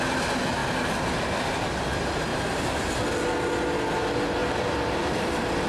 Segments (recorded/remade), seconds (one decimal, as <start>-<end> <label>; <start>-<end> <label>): 0.0-2.3 recorded; 2.3-2.9 remade; 2.9-4.4 recorded; 4.4-5.3 remade; 5.3-5.7 recorded